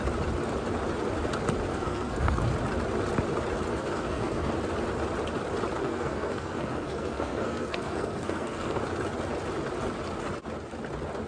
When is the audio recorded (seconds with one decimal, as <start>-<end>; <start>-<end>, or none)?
0.0-1.7; 2.4-3.7; 4.5-5.8; 8.8-11.3